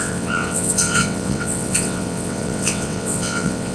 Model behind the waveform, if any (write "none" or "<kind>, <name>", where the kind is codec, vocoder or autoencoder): vocoder, WaveNeXt